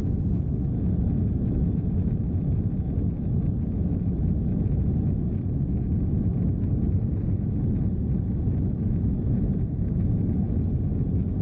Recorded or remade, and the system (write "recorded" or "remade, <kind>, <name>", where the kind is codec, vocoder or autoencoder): recorded